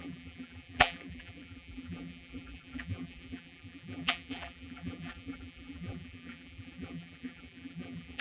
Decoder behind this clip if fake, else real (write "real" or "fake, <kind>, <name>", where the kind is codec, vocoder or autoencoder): fake, vocoder, BigVGAN v2